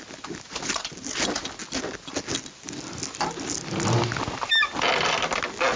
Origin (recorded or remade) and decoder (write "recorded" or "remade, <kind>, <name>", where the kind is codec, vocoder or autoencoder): recorded